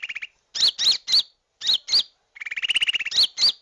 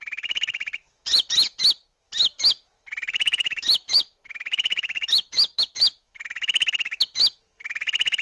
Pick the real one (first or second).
first